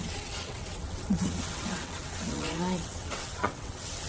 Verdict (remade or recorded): remade